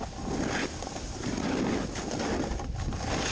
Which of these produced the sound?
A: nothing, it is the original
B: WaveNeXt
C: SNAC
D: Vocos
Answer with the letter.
A